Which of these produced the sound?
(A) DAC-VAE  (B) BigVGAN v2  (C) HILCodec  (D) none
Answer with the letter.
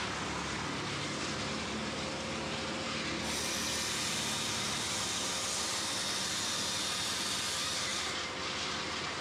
D